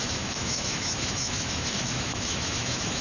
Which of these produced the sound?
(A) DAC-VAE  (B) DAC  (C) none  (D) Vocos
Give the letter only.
A